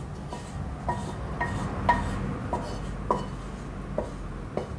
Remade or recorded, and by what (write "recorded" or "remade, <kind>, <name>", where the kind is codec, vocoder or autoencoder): recorded